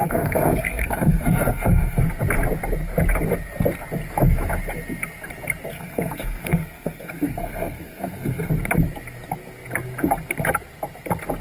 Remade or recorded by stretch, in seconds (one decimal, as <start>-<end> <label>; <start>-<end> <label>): 0.0-2.0 remade; 2.0-5.7 recorded; 5.7-8.5 remade; 8.5-11.4 recorded